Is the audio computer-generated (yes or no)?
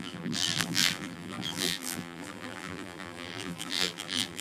yes